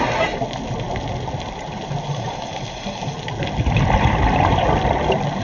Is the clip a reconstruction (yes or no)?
no